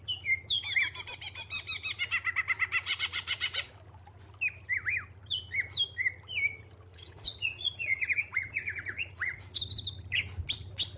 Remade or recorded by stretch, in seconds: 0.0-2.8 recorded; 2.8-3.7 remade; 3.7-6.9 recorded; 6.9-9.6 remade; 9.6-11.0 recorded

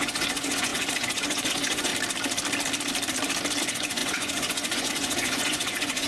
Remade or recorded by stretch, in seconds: 0.0-1.9 remade; 1.9-3.6 recorded; 3.6-6.1 remade

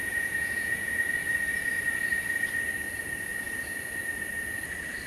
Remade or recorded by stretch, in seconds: 0.0-0.9 remade; 0.9-5.1 recorded